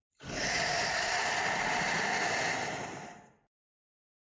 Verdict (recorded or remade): recorded